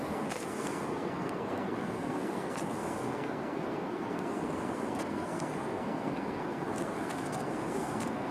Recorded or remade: remade